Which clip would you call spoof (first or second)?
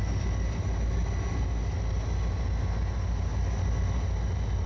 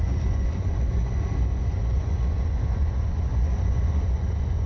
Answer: second